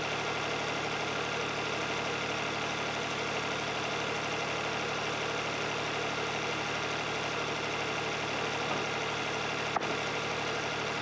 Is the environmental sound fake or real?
real